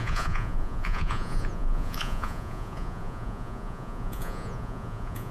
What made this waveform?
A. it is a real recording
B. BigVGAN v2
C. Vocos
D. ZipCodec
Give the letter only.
C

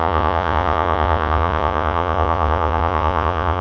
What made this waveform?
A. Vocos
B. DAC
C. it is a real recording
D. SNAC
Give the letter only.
A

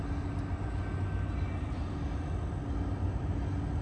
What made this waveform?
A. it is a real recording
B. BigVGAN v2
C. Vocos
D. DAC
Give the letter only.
A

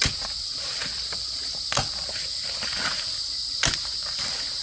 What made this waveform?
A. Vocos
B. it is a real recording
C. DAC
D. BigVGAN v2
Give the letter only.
B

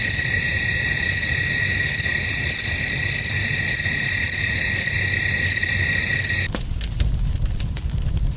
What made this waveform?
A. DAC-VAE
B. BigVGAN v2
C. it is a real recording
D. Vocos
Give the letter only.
C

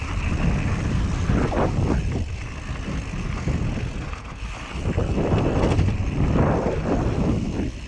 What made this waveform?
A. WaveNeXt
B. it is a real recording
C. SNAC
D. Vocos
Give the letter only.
B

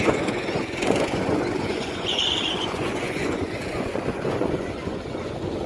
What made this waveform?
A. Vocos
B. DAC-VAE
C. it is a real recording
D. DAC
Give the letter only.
A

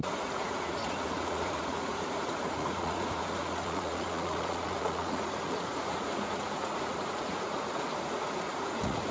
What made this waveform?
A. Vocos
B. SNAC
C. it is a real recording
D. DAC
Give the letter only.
A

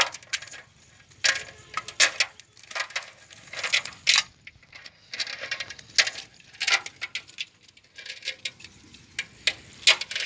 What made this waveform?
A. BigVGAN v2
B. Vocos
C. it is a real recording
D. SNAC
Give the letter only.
C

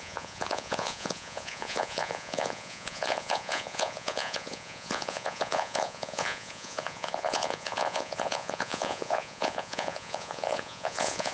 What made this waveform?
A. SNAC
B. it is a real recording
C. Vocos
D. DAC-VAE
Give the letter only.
C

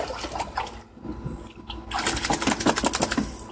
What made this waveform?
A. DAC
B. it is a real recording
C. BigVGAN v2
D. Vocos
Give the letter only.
B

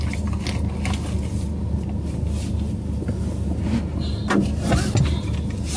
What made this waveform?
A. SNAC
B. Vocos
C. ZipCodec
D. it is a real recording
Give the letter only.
D